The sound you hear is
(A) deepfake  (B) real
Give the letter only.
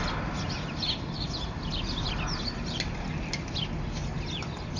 B